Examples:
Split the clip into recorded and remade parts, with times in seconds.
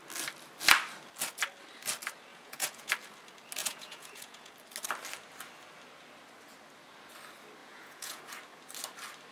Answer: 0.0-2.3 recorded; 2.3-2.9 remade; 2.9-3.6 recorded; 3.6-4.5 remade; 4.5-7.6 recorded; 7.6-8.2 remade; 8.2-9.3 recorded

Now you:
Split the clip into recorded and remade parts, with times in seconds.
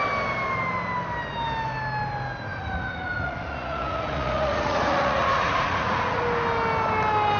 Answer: 0.0-2.5 recorded; 2.5-6.2 remade; 6.2-7.4 recorded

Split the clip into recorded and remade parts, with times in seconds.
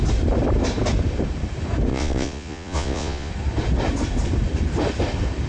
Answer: 0.0-1.9 recorded; 1.9-3.3 remade; 3.3-5.5 recorded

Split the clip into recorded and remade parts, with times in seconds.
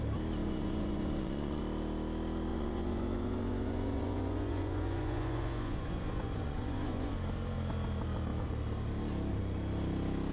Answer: 0.0-0.4 recorded; 0.4-1.6 remade; 1.6-2.5 recorded; 2.5-7.1 remade; 7.1-10.3 recorded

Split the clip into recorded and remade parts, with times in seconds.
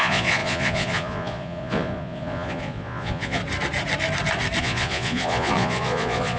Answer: 0.0-3.4 remade; 3.4-4.6 recorded; 4.6-6.4 remade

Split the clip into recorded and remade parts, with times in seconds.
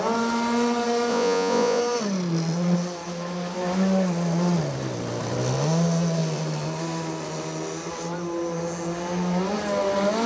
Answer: 0.0-1.1 recorded; 1.1-1.8 remade; 1.8-10.3 recorded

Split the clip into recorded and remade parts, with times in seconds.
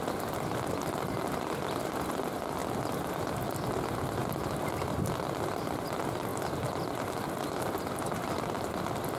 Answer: 0.0-9.2 recorded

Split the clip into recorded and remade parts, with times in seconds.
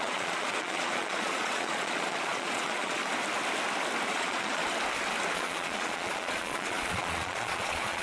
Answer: 0.0-3.0 remade; 3.0-4.1 recorded; 4.1-4.6 remade; 4.6-5.3 recorded; 5.3-8.0 remade